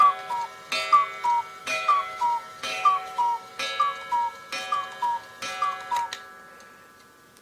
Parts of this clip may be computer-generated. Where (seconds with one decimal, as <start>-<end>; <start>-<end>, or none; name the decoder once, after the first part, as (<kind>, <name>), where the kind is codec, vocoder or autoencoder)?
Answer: 1.6-3.5 (autoencoder, DAC-VAE)